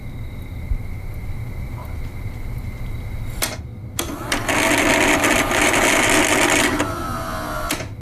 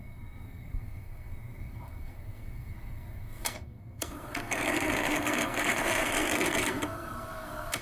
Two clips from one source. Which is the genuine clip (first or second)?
first